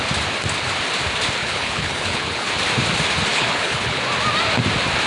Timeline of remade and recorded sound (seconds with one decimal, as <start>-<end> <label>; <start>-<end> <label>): 0.0-1.4 recorded; 1.4-2.5 remade; 2.5-3.3 recorded; 3.3-4.0 remade; 4.0-5.1 recorded